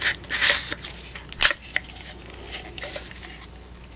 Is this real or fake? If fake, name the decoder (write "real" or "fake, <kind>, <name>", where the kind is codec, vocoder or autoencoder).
real